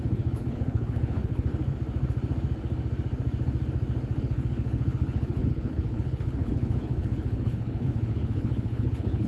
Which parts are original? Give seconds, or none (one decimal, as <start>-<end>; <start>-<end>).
1.5-4.2